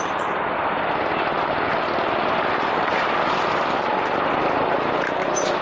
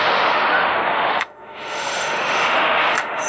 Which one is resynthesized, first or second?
second